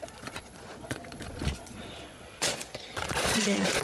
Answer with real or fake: fake